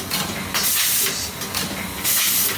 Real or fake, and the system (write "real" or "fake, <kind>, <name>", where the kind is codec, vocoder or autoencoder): real